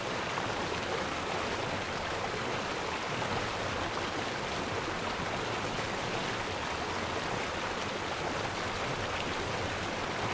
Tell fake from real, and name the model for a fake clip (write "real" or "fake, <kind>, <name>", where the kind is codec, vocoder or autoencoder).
real